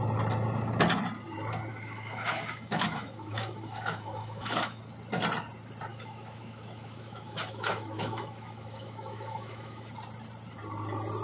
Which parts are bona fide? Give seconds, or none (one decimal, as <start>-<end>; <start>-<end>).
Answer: 0.0-1.7; 4.8-5.9; 9.9-11.2